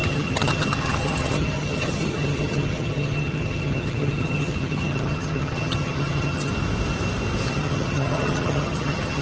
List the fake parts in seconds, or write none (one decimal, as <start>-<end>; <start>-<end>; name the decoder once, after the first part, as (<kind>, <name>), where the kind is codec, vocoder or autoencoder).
0.0-6.5 (vocoder, HiFi-GAN); 7.5-9.2